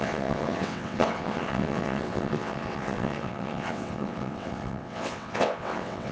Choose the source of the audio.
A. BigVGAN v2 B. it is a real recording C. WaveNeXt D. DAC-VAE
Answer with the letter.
C